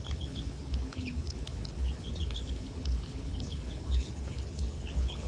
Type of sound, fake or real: fake